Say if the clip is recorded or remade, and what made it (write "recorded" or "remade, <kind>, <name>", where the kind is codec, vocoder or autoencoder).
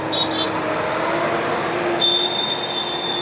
recorded